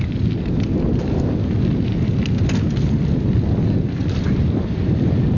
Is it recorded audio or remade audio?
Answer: recorded